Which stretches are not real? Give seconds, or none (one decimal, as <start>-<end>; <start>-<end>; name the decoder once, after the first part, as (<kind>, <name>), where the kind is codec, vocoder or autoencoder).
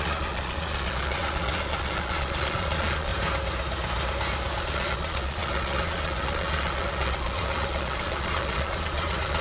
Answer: 0.0-3.1 (vocoder, Vocos); 4.6-9.4